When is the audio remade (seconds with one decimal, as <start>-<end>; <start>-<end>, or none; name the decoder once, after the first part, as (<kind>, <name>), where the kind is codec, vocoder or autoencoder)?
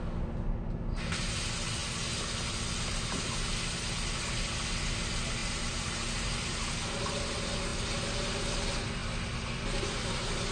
5.4-6.7 (vocoder, BigVGAN v2)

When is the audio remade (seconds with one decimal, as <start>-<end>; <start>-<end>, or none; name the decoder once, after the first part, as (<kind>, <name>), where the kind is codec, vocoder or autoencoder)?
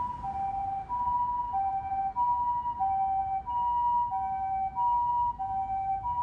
none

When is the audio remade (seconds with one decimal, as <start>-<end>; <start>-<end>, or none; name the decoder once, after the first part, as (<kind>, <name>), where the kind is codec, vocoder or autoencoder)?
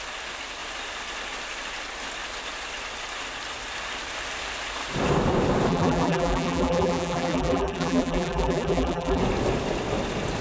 5.7-9.2 (vocoder, BigVGAN v2)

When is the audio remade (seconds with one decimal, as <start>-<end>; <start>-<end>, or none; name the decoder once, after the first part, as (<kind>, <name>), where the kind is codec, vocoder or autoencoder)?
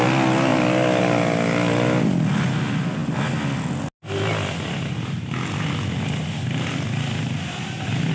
0.5-1.0 (vocoder, BigVGAN v2)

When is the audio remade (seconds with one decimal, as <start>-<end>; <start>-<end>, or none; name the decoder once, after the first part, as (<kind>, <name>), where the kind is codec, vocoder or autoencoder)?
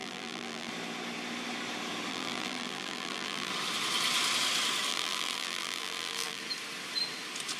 0.0-0.7 (vocoder, BigVGAN v2); 2.1-3.5; 4.9-6.4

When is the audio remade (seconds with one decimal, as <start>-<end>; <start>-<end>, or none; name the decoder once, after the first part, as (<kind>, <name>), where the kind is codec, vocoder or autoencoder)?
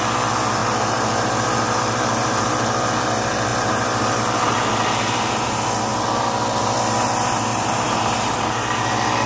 0.6-2.9 (vocoder, BigVGAN v2); 3.5-4.2; 7.5-8.4